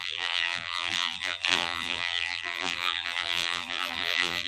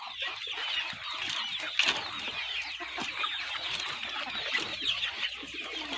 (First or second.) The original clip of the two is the second